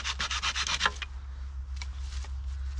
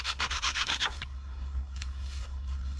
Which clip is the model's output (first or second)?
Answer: second